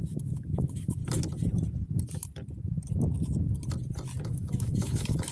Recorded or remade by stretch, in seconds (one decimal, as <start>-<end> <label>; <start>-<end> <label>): 0.0-1.0 remade; 1.0-4.2 recorded; 4.2-5.3 remade